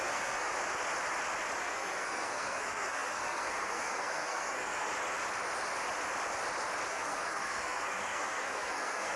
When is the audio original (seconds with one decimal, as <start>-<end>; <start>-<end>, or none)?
0.5-1.6; 4.9-6.9